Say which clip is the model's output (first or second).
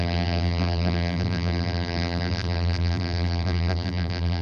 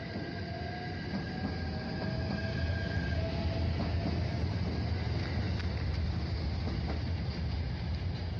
first